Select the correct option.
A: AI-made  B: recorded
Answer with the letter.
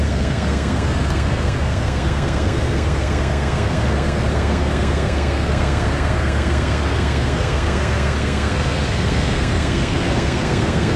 A